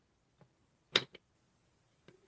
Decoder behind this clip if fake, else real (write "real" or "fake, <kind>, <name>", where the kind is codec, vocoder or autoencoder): real